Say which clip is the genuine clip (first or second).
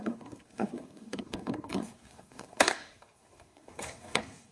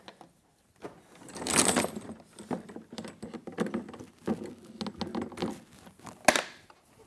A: second